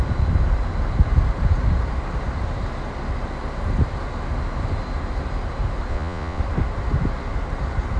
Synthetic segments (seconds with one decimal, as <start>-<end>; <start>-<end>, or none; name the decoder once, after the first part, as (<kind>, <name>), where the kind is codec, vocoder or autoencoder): 5.9-6.4 (vocoder, Vocos)